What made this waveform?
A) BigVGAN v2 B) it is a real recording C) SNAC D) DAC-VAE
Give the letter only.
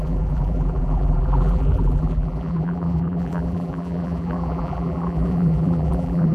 A